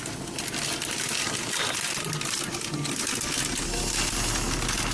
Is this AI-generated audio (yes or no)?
no